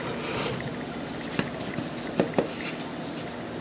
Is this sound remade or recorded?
recorded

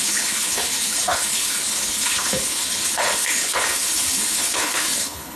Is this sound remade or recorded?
remade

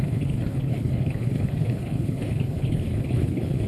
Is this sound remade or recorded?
remade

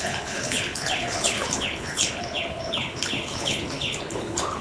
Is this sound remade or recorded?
remade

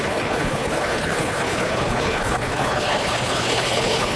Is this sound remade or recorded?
remade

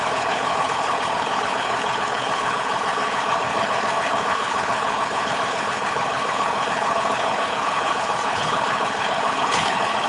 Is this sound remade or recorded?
remade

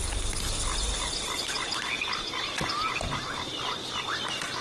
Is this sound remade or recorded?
recorded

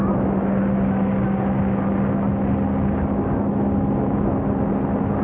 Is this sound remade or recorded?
recorded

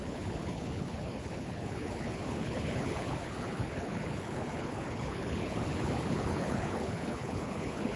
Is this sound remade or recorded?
remade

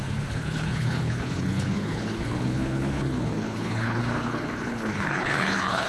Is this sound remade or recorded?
remade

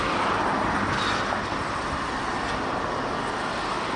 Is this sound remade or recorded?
recorded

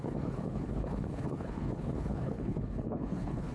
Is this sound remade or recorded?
remade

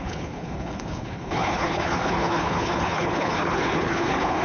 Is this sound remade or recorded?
remade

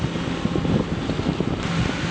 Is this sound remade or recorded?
recorded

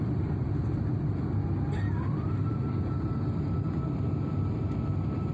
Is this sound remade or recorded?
recorded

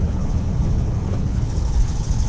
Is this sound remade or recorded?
remade